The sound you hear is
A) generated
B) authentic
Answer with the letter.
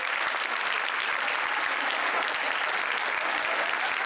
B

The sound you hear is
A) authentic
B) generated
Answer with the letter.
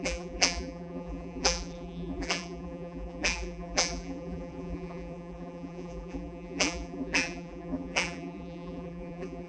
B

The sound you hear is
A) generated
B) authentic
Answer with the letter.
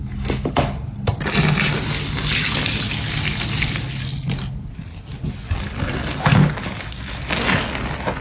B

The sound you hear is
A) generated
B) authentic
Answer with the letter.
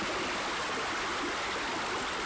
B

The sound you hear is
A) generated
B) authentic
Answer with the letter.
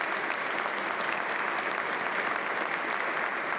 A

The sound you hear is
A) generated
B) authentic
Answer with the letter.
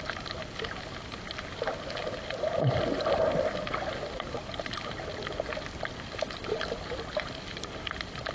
B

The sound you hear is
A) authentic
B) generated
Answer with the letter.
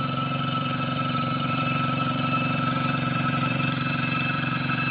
B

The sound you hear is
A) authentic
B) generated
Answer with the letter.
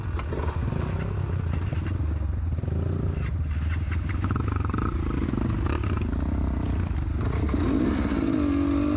A